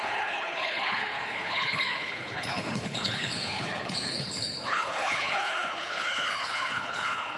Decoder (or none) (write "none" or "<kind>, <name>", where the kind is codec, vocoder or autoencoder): codec, HILCodec